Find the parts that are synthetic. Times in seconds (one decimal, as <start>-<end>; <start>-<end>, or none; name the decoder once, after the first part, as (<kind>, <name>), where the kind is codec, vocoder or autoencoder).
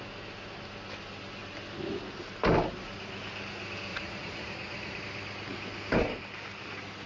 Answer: 3.9-5.0 (vocoder, Vocos)